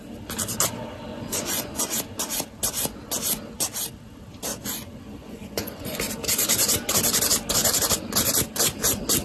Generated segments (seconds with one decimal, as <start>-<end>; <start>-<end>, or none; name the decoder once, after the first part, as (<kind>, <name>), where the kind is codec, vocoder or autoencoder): 1.1-2.0 (vocoder, Vocos); 4.5-6.0